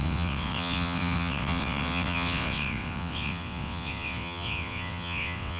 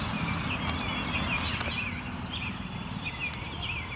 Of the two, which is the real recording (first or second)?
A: second